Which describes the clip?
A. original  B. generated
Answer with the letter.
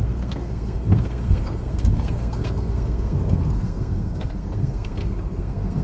B